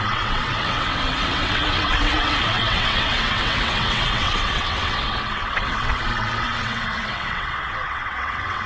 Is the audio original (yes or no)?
no